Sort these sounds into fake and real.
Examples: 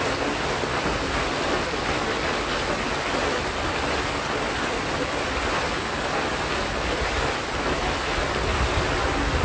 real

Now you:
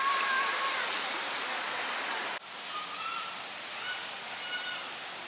real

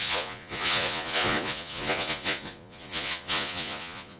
fake